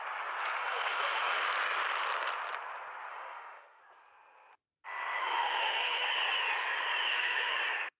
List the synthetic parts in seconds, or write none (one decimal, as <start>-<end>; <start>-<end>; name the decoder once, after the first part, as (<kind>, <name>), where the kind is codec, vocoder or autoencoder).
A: 0.6-1.4 (autoencoder, DAC-VAE); 3.1-3.8; 5.2-6.1; 7.1-7.6